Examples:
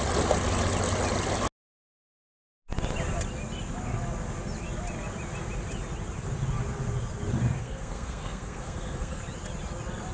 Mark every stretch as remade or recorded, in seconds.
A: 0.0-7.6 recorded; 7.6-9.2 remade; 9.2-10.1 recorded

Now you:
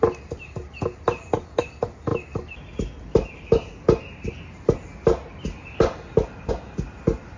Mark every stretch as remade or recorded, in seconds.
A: 0.0-7.4 recorded

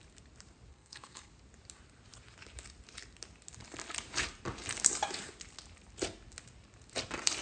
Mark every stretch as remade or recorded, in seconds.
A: 0.0-0.7 recorded; 0.7-1.3 remade; 1.3-7.4 recorded